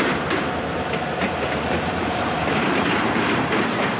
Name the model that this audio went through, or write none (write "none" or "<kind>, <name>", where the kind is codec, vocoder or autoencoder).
vocoder, BigVGAN v2